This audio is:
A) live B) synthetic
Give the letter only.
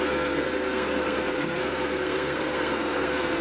B